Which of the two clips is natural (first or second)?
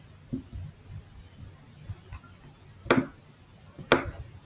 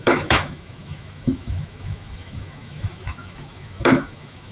first